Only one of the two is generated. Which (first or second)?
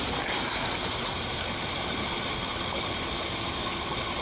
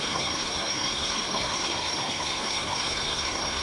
second